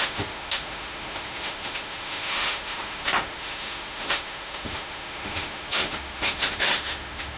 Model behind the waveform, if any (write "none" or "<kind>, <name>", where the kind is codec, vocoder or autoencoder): autoencoder, DAC-VAE